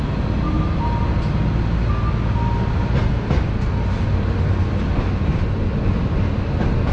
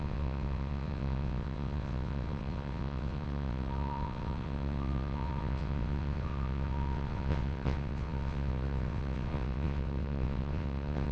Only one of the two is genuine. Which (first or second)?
first